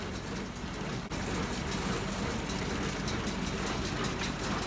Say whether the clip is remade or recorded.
recorded